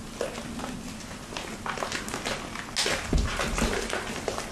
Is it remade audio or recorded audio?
recorded